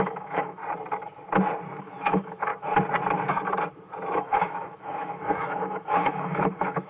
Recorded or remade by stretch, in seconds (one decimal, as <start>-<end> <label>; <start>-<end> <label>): 0.0-0.6 remade; 0.6-1.8 recorded; 1.8-2.5 remade; 2.5-4.2 recorded; 4.2-6.9 remade